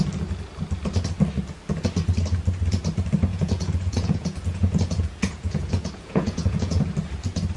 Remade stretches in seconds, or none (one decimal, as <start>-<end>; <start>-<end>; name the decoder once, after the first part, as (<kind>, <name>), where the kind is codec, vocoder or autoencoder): 3.3-6.9 (vocoder, Vocos)